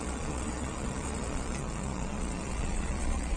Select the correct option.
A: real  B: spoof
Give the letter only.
B